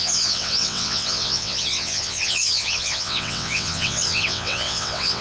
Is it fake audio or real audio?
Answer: fake